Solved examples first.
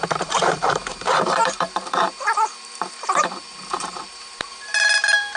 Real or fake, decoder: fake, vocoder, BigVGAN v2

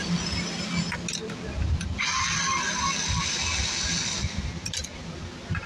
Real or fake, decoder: real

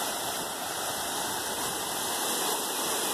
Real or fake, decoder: real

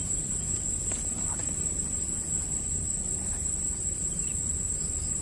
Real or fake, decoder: fake, vocoder, BigVGAN v2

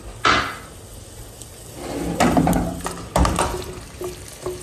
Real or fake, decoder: real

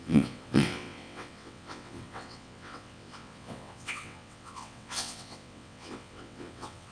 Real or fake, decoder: fake, vocoder, WaveNeXt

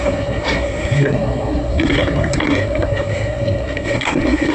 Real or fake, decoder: fake, codec, SNAC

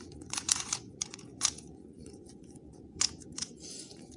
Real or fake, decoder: fake, vocoder, Vocos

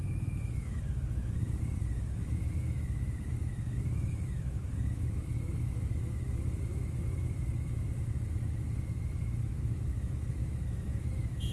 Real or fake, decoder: fake, autoencoder, DAC-VAE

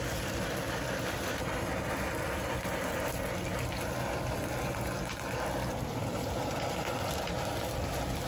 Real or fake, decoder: real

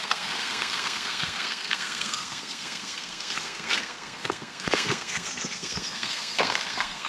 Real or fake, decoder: fake, codec, SNAC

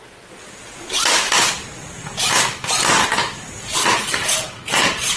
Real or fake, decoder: real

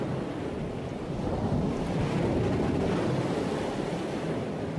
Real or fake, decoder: real